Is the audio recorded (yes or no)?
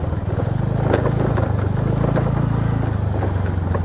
yes